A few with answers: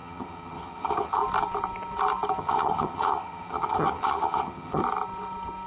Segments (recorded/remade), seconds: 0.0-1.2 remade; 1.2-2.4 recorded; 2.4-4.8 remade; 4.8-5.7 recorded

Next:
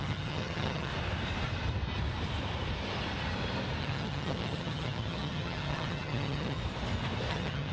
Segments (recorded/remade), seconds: 0.0-0.9 remade; 0.9-3.8 recorded; 3.8-6.6 remade; 6.6-7.3 recorded; 7.3-7.7 remade

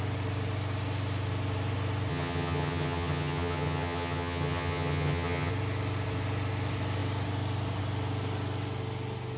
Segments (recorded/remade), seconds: 0.0-2.1 recorded; 2.1-5.5 remade; 5.5-9.4 recorded

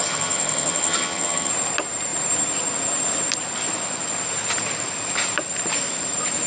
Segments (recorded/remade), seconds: 0.0-1.5 remade; 1.5-6.5 recorded

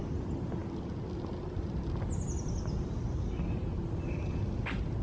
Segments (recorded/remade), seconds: 0.0-5.0 recorded